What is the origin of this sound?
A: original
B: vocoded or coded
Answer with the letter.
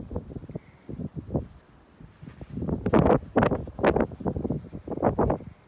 A